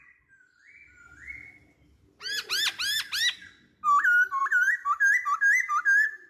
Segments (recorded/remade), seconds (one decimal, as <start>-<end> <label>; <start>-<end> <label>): 0.0-6.3 recorded